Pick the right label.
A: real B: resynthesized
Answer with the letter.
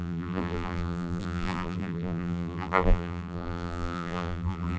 B